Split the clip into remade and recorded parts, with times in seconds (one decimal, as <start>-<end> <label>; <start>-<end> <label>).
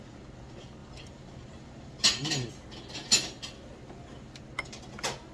0.0-0.8 recorded; 0.8-2.5 remade; 2.5-5.3 recorded